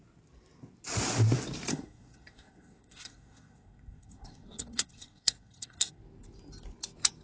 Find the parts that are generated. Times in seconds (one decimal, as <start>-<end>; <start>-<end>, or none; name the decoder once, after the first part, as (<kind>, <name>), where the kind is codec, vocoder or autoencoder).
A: 1.7-6.0 (codec, SNAC)